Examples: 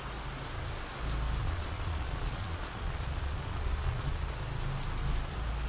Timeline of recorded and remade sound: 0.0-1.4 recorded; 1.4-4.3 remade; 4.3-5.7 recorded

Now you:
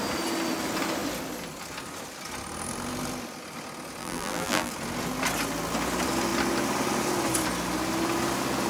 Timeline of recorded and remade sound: 0.0-4.0 recorded; 4.0-4.7 remade; 4.7-8.7 recorded

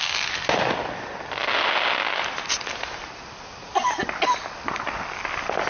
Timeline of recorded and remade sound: 0.0-5.7 recorded

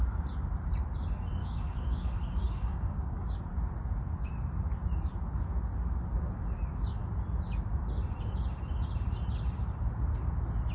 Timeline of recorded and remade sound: 0.0-1.4 recorded; 1.4-3.4 remade; 3.4-10.7 recorded

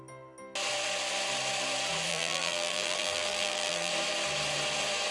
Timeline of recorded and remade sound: 0.0-2.1 recorded; 2.1-3.9 remade; 3.9-5.1 recorded

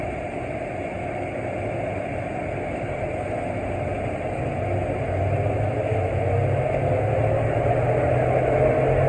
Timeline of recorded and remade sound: 0.0-9.1 recorded